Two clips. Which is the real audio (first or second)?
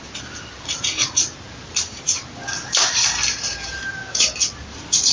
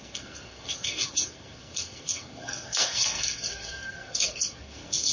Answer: first